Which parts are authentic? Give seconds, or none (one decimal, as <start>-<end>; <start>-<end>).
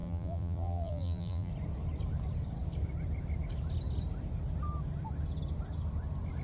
1.5-6.4